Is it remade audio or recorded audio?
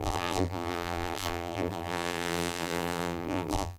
remade